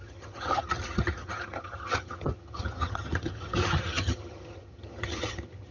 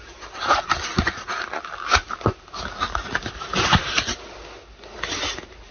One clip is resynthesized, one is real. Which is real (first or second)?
second